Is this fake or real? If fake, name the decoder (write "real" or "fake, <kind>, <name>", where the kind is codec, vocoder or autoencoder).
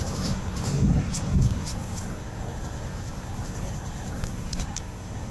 fake, codec, SNAC